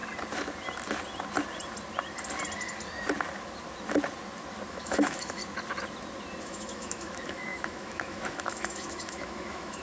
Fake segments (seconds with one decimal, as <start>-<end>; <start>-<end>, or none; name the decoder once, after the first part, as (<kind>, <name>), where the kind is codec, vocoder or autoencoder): 4.7-5.4 (autoencoder, DAC-VAE); 6.4-9.8